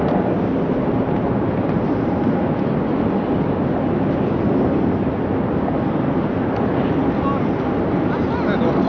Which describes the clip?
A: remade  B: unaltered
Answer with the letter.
B